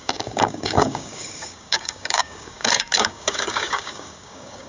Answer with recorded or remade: remade